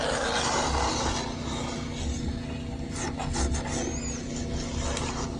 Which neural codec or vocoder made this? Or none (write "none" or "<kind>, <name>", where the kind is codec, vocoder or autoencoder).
none